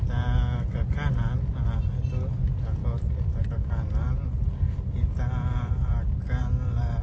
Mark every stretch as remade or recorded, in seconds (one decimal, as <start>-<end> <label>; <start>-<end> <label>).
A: 0.0-2.8 recorded; 2.8-4.3 remade; 4.3-5.4 recorded; 5.4-6.4 remade; 6.4-7.0 recorded